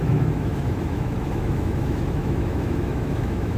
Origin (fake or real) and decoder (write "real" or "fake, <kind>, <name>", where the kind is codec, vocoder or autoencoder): fake, autoencoder, DAC-VAE